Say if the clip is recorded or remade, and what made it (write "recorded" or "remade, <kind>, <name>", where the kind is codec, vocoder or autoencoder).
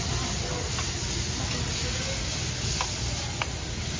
recorded